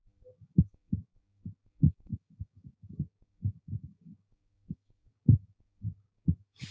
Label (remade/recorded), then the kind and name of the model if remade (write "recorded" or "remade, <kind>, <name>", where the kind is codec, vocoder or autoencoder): remade, codec, DAC